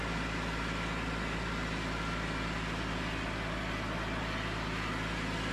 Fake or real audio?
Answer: real